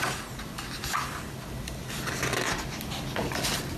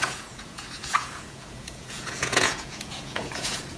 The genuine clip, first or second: first